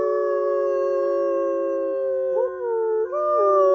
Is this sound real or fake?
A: real